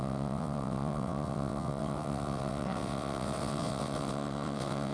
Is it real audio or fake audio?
fake